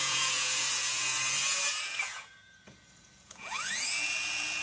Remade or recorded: remade